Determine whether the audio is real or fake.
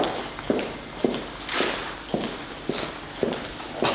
real